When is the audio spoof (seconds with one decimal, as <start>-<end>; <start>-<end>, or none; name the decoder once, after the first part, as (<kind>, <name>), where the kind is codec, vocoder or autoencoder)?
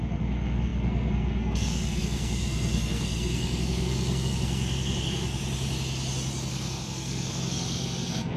0.0-5.4 (codec, SNAC); 6.5-8.4